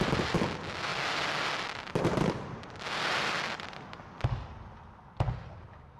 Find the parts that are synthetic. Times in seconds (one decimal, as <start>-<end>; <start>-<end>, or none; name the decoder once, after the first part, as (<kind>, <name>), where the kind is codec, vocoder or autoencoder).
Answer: none